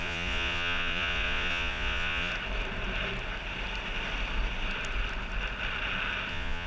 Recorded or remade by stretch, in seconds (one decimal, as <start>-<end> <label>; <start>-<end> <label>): 0.0-2.3 remade; 2.3-6.3 recorded; 6.3-6.7 remade